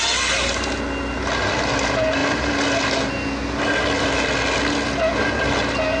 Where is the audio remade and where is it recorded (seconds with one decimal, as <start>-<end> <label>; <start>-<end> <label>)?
0.0-6.0 recorded